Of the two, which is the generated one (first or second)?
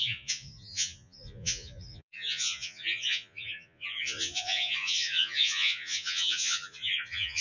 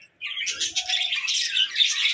first